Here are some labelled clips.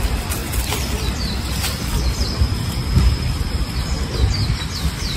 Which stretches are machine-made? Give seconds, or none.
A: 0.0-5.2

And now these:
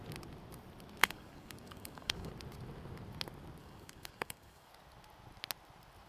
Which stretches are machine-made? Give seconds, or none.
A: 1.0-2.3; 3.6-4.7

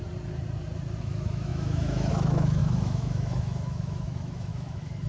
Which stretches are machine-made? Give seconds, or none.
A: 1.0-5.1

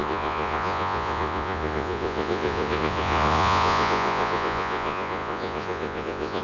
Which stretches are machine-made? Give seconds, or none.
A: 0.0-6.4

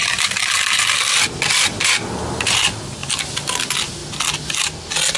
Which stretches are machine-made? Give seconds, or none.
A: 0.0-1.7; 3.0-3.6

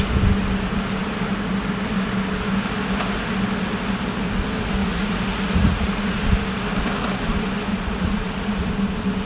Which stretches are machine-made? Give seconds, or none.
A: 4.8-6.2; 7.7-8.7